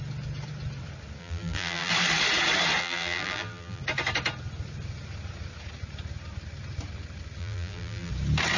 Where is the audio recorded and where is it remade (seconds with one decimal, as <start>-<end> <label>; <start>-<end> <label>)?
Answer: 0.0-1.2 recorded; 1.2-1.9 remade; 1.9-2.8 recorded; 2.8-3.8 remade; 3.8-7.4 recorded; 7.4-8.1 remade; 8.1-8.6 recorded